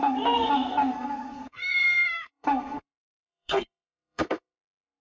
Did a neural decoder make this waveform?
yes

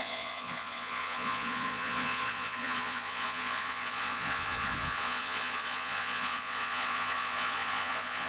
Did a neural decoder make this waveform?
yes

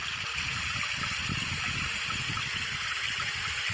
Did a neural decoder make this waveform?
no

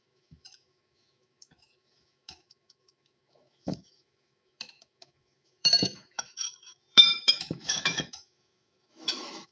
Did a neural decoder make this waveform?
yes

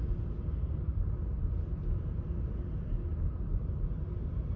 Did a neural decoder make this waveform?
no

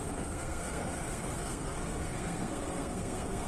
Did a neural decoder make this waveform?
yes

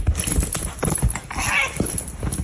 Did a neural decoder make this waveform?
no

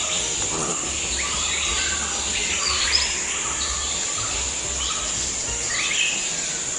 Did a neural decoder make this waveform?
no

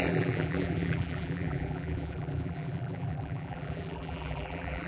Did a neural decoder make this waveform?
yes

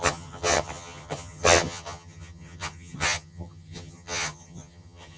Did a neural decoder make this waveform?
yes